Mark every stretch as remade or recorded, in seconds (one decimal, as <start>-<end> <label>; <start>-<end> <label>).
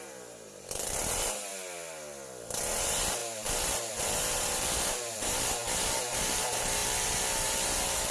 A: 0.0-1.5 remade; 1.5-2.6 recorded; 2.6-8.1 remade